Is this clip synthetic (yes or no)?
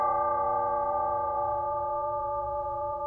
yes